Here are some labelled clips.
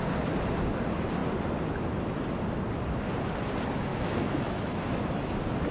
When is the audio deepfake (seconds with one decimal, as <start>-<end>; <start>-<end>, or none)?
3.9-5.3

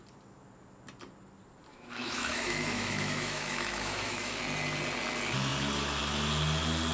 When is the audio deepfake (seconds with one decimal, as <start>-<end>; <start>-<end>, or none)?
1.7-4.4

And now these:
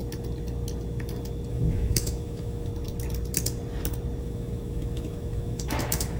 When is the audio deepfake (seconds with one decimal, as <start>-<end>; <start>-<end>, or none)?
1.5-2.7; 4.2-6.2

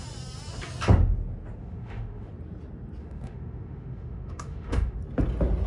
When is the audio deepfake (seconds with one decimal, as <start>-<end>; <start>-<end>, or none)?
1.6-2.3; 3.0-5.0

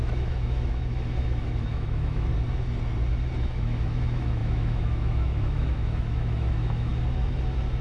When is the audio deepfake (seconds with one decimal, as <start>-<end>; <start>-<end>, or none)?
0.0-2.3; 3.4-6.9

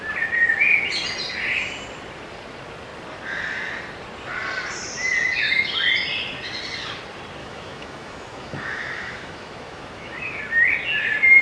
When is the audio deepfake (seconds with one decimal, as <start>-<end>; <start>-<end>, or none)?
7.4-10.4

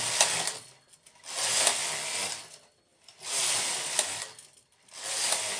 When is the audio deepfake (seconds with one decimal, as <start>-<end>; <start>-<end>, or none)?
none

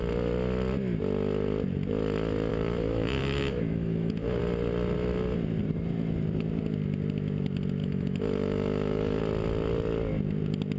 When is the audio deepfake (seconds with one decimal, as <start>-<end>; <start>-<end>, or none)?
2.5-4.4; 7.8-9.2